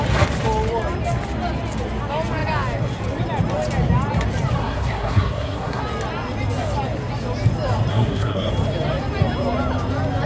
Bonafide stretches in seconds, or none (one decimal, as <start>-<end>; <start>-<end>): 0.0-4.6; 5.8-7.9; 8.5-10.3

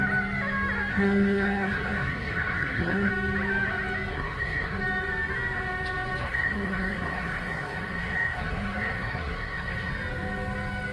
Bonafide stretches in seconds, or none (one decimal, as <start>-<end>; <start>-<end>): 0.0-0.9; 3.1-4.1; 4.8-6.2; 9.9-10.9

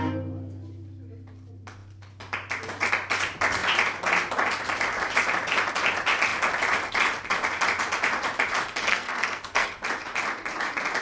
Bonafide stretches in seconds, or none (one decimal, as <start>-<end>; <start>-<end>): 0.0-8.9; 9.7-11.0

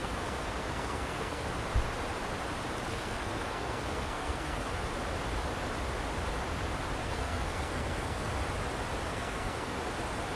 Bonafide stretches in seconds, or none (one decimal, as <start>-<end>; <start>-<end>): 1.4-2.9; 4.7-7.0; 8.3-9.1; 9.8-10.4

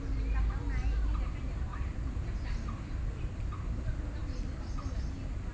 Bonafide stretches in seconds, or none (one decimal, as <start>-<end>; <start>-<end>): 0.0-5.5